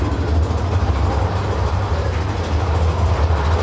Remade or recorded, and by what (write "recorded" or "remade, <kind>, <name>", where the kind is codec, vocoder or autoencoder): recorded